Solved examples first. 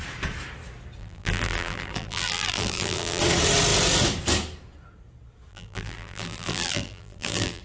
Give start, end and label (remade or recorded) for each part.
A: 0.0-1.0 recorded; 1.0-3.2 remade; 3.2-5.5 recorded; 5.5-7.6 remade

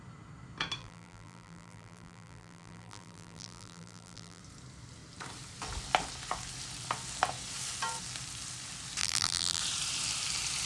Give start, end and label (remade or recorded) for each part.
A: 0.0-0.8 recorded; 0.8-4.4 remade; 4.4-9.0 recorded; 9.0-9.6 remade; 9.6-10.7 recorded

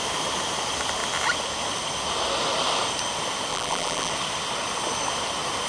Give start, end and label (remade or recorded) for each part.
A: 0.0-3.5 recorded; 3.5-4.1 remade; 4.1-5.7 recorded